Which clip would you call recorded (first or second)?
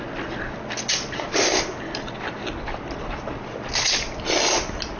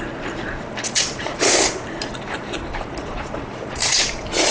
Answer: first